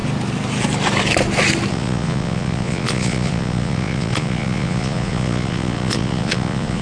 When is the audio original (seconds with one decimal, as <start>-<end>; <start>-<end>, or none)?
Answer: 0.0-1.7